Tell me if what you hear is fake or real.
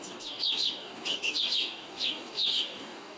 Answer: fake